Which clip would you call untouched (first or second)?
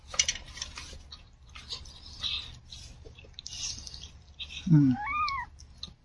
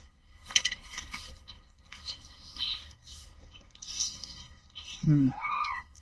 first